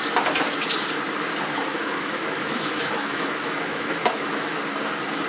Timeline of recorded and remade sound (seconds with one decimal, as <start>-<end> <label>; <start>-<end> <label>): 0.0-1.7 recorded; 1.7-4.6 remade; 4.6-5.3 recorded